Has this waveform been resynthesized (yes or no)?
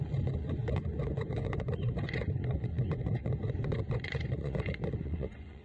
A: yes